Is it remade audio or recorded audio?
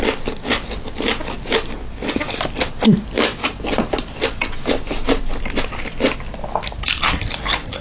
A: recorded